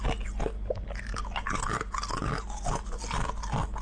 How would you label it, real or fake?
real